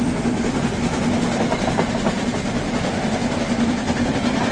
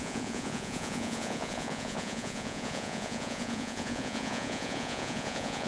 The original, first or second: first